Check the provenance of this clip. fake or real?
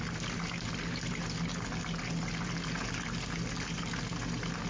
real